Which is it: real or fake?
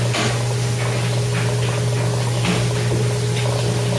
real